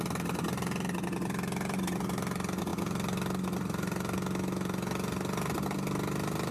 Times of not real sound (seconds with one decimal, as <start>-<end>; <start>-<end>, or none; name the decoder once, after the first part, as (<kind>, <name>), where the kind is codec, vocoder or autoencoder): none